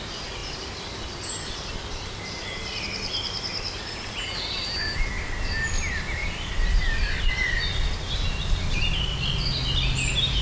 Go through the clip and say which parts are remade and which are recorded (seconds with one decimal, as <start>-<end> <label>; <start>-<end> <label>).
0.0-0.4 recorded; 0.4-2.8 remade; 2.8-6.2 recorded; 6.2-7.3 remade; 7.3-10.4 recorded